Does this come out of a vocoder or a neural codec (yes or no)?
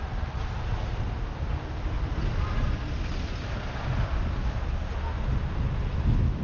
no